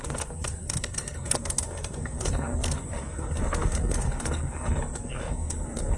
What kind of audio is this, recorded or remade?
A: remade